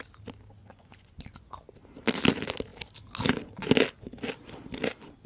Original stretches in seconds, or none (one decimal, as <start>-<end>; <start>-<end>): 0.0-0.6; 1.6-5.3